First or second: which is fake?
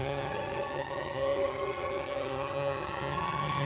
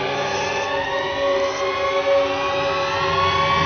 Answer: first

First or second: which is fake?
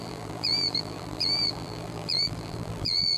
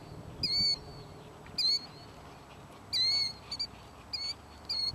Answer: first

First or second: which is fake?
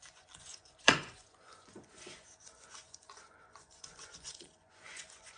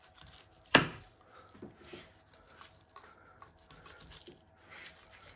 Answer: first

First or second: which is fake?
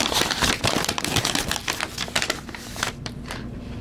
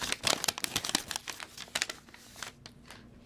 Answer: first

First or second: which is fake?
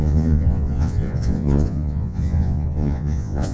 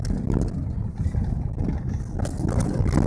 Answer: first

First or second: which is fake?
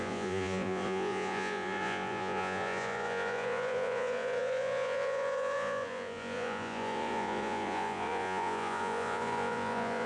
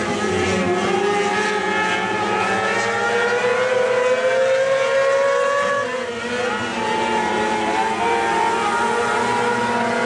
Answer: first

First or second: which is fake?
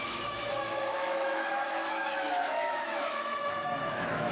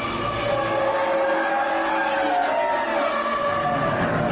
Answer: first